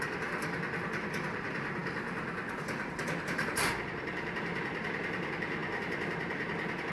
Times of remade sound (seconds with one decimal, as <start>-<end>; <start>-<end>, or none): none